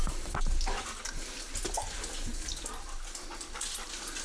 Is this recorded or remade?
recorded